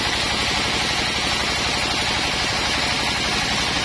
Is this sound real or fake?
real